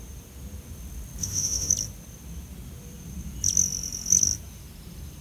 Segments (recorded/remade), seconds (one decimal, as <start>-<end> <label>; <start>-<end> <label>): 0.0-1.2 recorded; 1.2-1.7 remade; 1.7-5.2 recorded